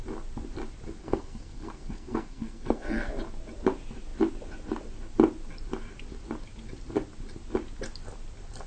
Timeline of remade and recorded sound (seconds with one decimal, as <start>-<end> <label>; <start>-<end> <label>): 0.0-1.0 recorded; 1.0-3.1 remade; 3.1-8.7 recorded